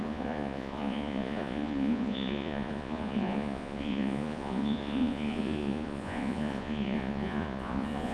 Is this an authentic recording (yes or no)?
no